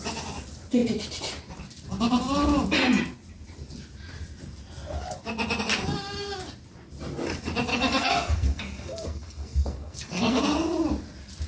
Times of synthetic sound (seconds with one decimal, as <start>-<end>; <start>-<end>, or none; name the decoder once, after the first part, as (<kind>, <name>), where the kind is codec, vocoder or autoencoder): 7.7-10.4 (codec, SNAC)